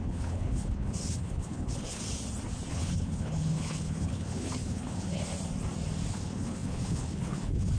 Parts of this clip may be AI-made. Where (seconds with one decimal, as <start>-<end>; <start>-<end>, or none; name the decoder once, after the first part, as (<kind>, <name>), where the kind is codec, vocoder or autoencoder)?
0.0-2.0 (codec, HILCodec); 2.7-5.3; 6.1-7.8

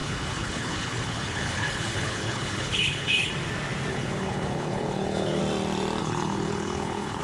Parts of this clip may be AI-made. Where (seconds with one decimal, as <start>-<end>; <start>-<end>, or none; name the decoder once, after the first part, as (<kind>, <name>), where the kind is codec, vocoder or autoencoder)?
0.0-3.3 (codec, HILCodec); 3.9-5.4; 6.0-7.2

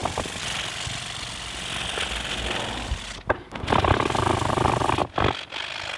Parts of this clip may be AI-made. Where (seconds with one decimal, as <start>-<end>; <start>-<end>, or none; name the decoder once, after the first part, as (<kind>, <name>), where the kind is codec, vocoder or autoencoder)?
none